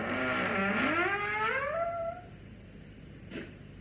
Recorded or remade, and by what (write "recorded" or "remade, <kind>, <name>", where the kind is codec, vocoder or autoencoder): recorded